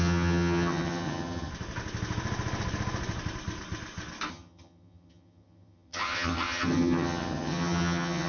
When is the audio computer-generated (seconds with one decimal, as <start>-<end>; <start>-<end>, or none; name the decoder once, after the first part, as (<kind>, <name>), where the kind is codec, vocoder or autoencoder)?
0.0-1.5 (vocoder, HiFi-GAN); 4.3-8.3